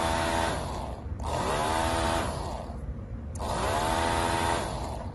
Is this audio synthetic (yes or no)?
no